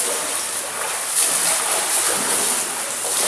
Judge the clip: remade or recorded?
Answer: recorded